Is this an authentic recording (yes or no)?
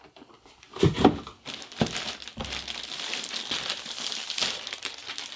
yes